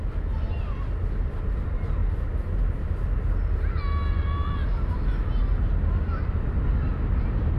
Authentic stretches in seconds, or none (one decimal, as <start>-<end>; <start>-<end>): 0.0-7.6